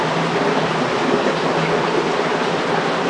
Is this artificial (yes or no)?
no